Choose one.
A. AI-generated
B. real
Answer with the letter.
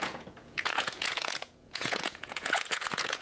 A